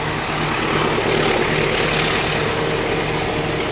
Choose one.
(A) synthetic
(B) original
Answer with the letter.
B